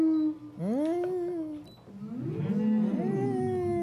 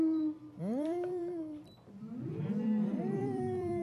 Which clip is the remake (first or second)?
second